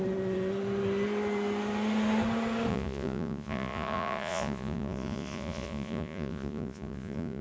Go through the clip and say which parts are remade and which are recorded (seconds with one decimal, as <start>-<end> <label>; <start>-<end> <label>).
0.0-2.7 recorded; 2.7-7.4 remade